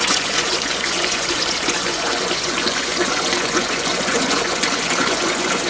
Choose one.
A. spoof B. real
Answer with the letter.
A